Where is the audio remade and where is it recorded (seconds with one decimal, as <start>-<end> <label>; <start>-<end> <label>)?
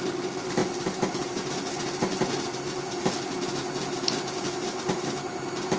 0.0-5.8 recorded